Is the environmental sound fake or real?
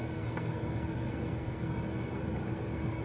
fake